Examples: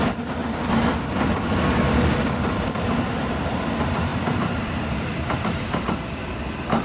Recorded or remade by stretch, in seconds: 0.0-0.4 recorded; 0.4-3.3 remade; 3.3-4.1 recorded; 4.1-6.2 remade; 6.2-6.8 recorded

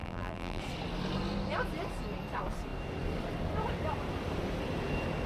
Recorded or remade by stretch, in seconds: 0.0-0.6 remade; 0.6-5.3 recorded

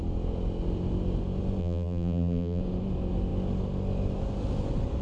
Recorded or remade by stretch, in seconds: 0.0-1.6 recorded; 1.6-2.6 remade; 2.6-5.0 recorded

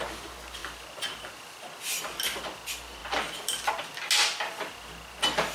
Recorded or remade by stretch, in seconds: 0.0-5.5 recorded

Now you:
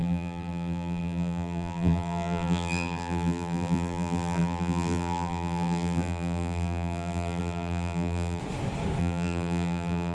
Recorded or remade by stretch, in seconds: 0.0-8.4 remade; 8.4-9.0 recorded; 9.0-10.1 remade

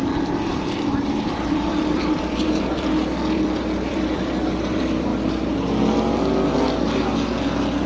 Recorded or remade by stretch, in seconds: 0.0-0.5 recorded; 0.5-5.1 remade; 5.1-7.9 recorded

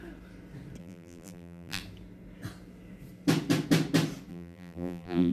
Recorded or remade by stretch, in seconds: 0.0-0.8 recorded; 0.8-1.8 remade; 1.8-4.3 recorded; 4.3-5.3 remade

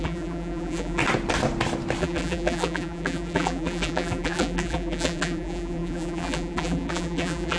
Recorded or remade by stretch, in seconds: 0.0-1.0 remade; 1.0-2.0 recorded; 2.0-7.6 remade